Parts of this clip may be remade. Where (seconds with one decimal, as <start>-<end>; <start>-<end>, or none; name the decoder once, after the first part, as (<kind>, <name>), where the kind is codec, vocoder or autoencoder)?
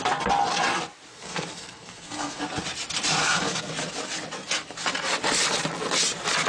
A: 1.1-2.4 (codec, SNAC); 3.2-3.7